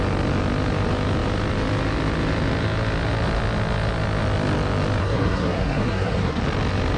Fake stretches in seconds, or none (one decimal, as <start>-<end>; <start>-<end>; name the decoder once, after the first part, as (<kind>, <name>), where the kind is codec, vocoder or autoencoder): 5.0-6.4 (codec, SNAC)